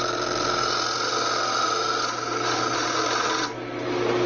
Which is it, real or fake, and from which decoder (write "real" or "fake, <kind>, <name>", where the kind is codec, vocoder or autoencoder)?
real